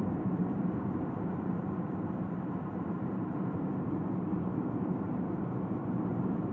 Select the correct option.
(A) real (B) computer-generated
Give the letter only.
B